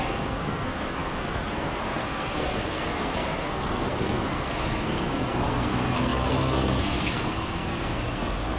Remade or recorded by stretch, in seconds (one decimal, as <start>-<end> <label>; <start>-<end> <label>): 0.0-8.6 remade